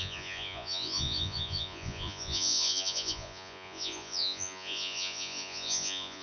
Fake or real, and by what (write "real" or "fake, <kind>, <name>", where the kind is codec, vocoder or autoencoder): fake, vocoder, Vocos